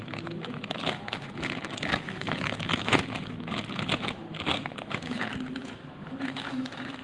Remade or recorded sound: remade